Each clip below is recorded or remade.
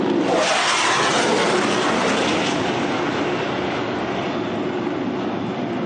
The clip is recorded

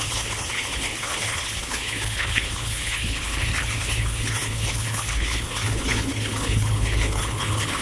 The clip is remade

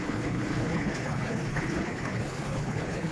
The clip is remade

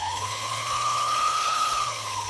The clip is remade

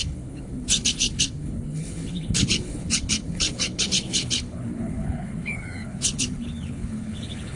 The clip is remade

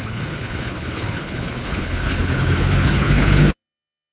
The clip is remade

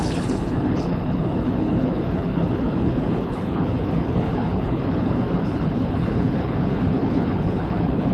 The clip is remade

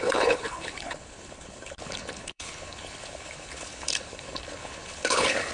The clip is remade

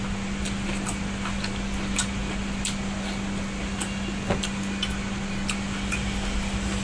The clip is recorded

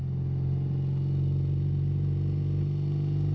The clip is recorded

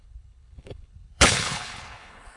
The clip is remade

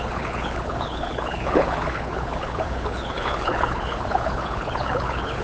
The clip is remade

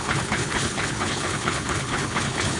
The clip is remade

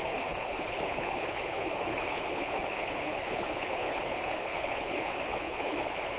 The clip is remade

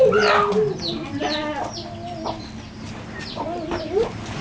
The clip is recorded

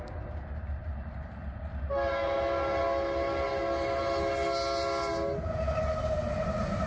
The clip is recorded